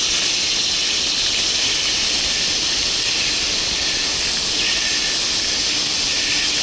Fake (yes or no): no